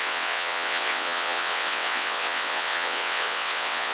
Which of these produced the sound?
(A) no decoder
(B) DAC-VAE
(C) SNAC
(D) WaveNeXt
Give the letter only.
D